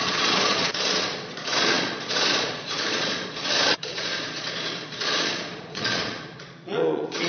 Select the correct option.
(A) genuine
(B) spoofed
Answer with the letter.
B